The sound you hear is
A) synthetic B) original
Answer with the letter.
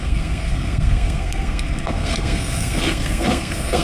A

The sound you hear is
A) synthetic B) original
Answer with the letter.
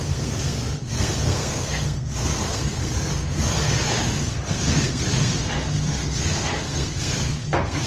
A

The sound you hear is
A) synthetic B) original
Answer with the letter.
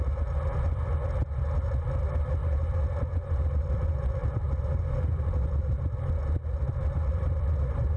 B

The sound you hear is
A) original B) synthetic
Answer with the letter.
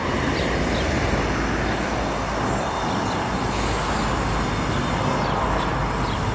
A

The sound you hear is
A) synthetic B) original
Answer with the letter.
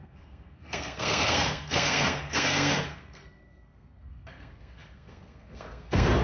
A